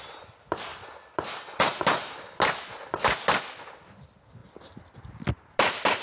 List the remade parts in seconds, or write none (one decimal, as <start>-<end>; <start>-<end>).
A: none